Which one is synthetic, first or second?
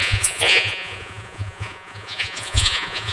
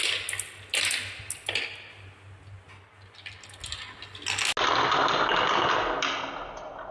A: first